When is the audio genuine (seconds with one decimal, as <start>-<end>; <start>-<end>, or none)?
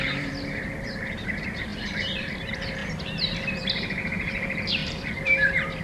2.8-3.5